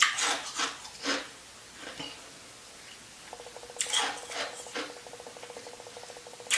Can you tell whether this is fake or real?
real